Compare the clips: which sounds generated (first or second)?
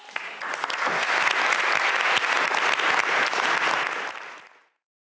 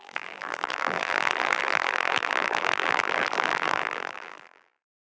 second